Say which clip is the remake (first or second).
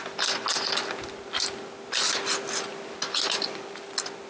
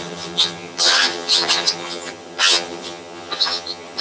second